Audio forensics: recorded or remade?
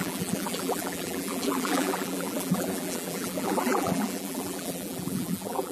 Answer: remade